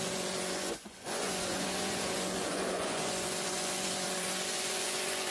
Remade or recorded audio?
remade